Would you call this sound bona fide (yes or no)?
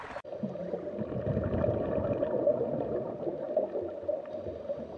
yes